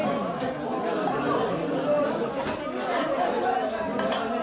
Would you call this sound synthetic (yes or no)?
no